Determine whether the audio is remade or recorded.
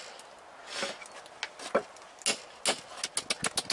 recorded